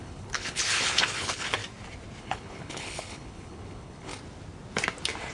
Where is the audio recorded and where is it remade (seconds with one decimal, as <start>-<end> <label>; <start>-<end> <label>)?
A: 0.0-1.6 remade; 1.6-2.2 recorded; 2.2-4.1 remade; 4.1-5.3 recorded